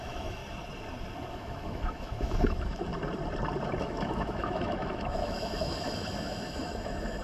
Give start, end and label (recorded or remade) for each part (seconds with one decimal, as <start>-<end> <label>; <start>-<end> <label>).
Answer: 0.0-0.4 remade; 0.4-1.3 recorded; 1.3-2.9 remade; 2.9-3.8 recorded; 3.8-7.2 remade